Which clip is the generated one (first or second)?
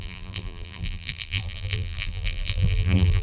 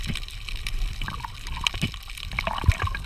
first